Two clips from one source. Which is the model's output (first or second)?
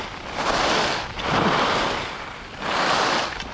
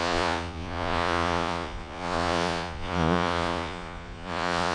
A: second